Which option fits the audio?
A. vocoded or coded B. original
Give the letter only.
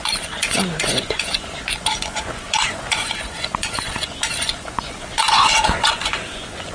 A